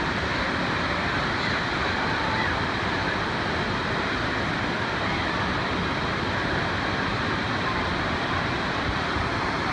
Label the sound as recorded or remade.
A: remade